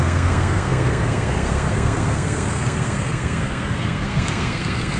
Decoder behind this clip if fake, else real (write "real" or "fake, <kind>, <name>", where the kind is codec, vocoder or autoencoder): fake, codec, SNAC